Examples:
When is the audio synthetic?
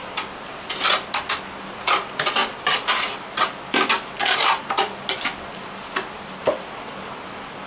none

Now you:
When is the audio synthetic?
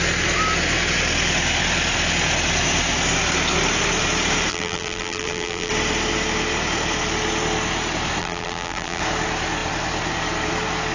4.5-5.7 (vocoder, BigVGAN v2); 8.2-9.0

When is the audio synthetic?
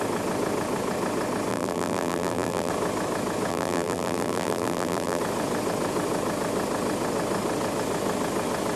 1.5-2.7 (vocoder, BigVGAN v2); 3.5-5.2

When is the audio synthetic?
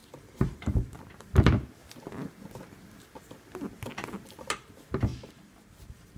0.0-0.9 (vocoder, BigVGAN v2); 5.1-6.2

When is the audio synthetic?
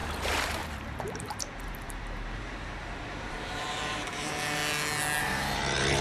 0.0-4.6 (vocoder, BigVGAN v2); 5.2-6.0